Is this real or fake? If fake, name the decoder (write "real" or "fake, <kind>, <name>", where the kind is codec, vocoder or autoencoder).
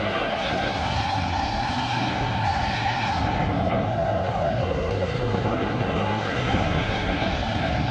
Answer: fake, codec, SNAC